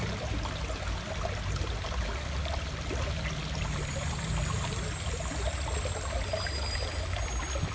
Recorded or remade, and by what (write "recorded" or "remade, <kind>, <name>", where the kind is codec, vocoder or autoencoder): recorded